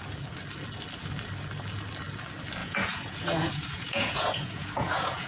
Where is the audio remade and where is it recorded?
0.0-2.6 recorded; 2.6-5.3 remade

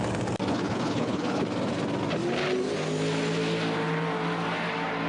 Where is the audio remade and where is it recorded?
0.0-0.5 recorded; 0.5-1.4 remade; 1.4-5.1 recorded